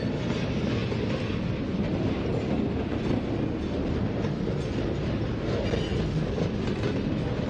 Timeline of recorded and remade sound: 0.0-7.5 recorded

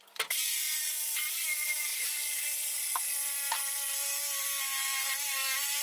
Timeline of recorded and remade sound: 0.0-5.8 recorded

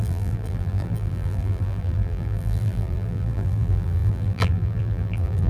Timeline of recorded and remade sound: 0.0-5.5 remade

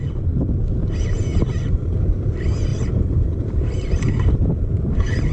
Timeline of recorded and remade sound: 0.0-2.7 recorded; 2.7-4.0 remade; 4.0-5.3 recorded

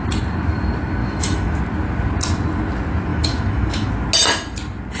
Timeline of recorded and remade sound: 0.0-1.0 recorded; 1.0-1.6 remade; 1.6-3.1 recorded; 3.1-3.9 remade; 3.9-5.0 recorded

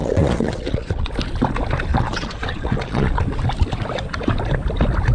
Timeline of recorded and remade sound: 0.0-1.1 remade; 1.1-1.9 recorded; 1.9-3.2 remade; 3.2-5.1 recorded